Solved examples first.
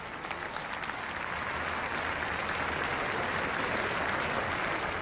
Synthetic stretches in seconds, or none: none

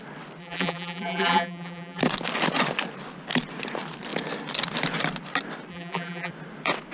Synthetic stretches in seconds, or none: 0.4-2.0 (vocoder, BigVGAN v2); 5.7-6.3

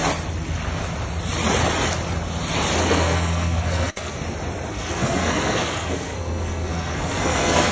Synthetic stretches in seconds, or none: 2.8-4.2 (codec, SNAC); 4.7-7.7

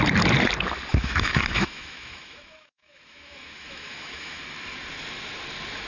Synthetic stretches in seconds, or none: 0.9-4.4 (autoencoder, DAC-VAE)

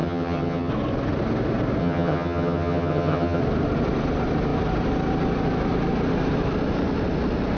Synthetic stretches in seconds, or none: 0.0-0.7 (vocoder, HiFi-GAN); 1.8-3.4

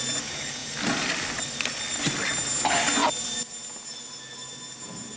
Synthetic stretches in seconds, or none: 0.6-1.4 (vocoder, BigVGAN v2)

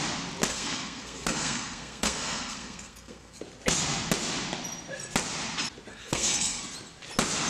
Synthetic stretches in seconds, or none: 0.5-3.4 (codec, SNAC); 5.9-6.6